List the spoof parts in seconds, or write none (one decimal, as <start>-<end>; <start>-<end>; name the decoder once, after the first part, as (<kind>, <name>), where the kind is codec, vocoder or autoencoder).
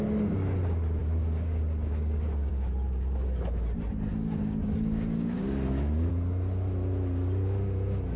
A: 1.0-2.5 (codec, DAC); 4.1-6.1